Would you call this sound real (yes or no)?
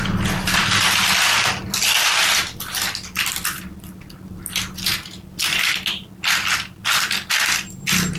yes